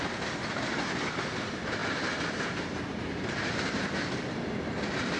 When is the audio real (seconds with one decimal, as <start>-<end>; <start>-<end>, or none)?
0.0-5.2

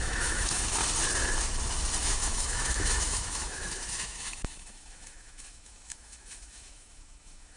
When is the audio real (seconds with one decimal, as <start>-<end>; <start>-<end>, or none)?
0.8-2.0

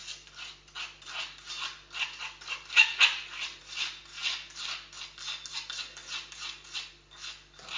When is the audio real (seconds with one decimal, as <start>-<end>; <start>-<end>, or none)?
0.0-7.8

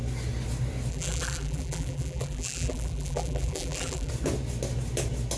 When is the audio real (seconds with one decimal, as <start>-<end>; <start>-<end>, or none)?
0.0-0.9; 4.1-5.4